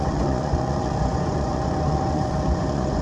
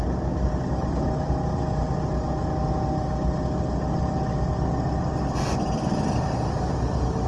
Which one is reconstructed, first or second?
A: first